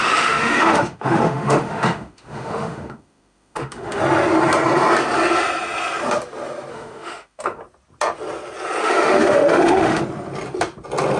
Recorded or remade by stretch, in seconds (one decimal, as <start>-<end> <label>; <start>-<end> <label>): 0.0-4.0 remade; 4.0-6.7 recorded; 6.7-7.6 remade; 7.6-8.8 recorded; 8.8-10.0 remade; 10.0-11.2 recorded